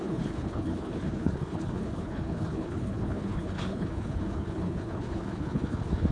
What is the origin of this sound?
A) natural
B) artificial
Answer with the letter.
B